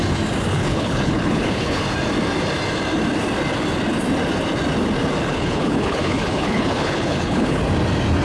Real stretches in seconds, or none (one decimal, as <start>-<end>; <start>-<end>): 0.0-0.5; 1.8-5.2; 7.6-8.2